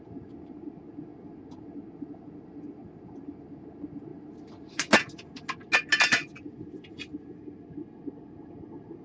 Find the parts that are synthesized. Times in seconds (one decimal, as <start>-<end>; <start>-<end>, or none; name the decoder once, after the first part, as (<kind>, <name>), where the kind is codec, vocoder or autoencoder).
none